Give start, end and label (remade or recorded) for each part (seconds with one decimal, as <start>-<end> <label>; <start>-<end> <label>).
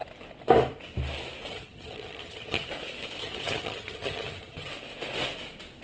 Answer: 0.0-1.5 recorded; 1.5-2.7 remade; 2.7-3.2 recorded; 3.2-4.7 remade; 4.7-5.8 recorded